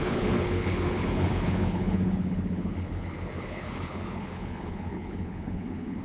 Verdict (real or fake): fake